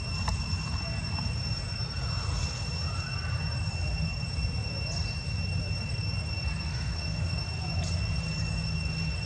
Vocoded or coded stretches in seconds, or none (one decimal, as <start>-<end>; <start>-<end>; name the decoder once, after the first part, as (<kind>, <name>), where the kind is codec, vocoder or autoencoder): 6.7-7.4 (autoencoder, DAC-VAE)